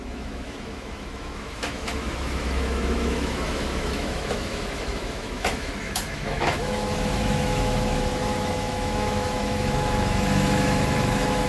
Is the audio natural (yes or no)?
no